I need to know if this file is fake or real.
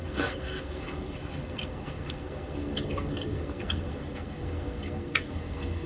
fake